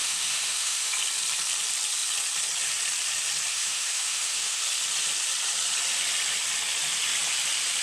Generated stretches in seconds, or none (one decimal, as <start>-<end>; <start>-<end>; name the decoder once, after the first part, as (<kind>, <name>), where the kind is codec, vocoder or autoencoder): 0.0-0.9 (autoencoder, DAC-VAE); 3.5-4.6